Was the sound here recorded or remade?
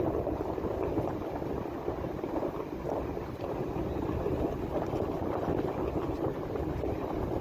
recorded